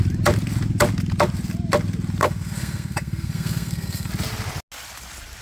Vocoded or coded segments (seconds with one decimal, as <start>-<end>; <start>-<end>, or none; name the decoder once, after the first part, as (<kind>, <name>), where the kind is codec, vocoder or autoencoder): 2.2-4.1 (codec, SNAC)